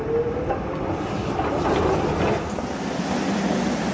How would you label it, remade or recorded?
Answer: recorded